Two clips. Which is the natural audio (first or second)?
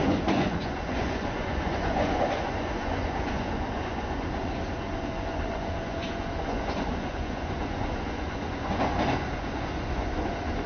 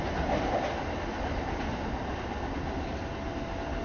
second